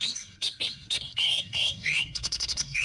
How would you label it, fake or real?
fake